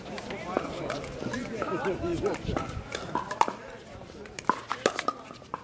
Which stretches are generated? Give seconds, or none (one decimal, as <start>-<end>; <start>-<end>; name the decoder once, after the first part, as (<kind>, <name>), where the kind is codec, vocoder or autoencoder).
2.1-5.6 (vocoder, BigVGAN v2)